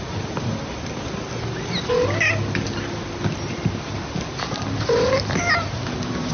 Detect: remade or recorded recorded